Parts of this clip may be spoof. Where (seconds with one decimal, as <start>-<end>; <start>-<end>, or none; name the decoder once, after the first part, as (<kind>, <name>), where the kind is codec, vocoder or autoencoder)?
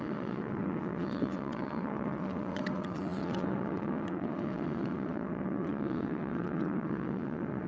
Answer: 0.0-7.7 (vocoder, WaveNeXt)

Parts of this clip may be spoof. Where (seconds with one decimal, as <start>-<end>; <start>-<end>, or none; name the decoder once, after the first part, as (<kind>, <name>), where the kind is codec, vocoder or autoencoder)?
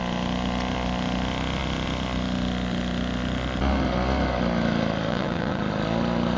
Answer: 5.1-5.6 (vocoder, WaveNeXt)